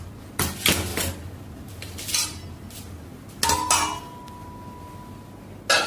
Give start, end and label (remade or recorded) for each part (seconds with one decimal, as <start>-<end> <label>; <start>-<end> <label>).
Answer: 0.0-5.9 recorded